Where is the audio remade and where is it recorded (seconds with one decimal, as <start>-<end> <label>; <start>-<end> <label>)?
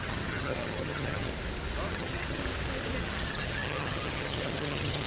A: 0.0-1.3 remade; 1.3-1.9 recorded; 1.9-2.4 remade; 2.4-3.0 recorded; 3.0-5.1 remade